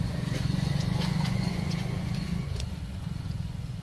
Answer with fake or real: fake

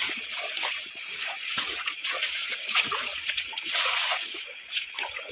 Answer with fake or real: fake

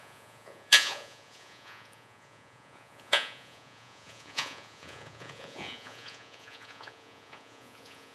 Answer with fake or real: fake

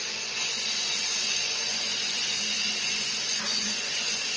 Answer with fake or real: fake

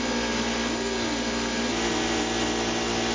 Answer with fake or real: real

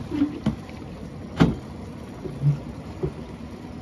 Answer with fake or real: real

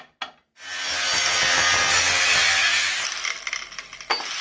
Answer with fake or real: real